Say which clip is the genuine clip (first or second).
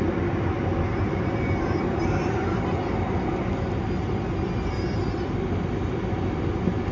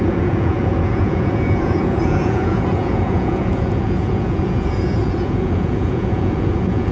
first